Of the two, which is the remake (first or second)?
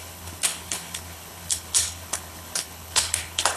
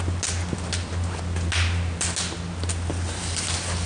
first